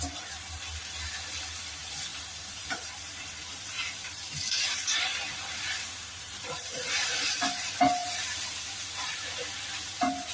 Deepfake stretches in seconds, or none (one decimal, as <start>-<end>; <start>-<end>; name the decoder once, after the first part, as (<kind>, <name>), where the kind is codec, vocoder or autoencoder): 2.1-7.3 (vocoder, BigVGAN v2); 8.0-9.2